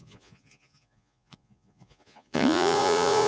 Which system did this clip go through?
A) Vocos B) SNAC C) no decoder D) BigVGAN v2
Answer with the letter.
A